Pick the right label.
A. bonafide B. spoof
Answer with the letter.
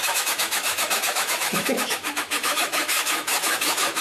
B